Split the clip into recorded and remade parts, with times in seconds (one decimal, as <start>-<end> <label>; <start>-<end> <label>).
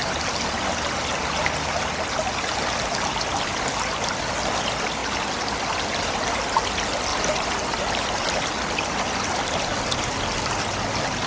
0.0-3.5 recorded; 3.5-4.1 remade; 4.1-5.0 recorded; 5.0-5.8 remade; 5.8-7.1 recorded; 7.1-10.5 remade; 10.5-11.3 recorded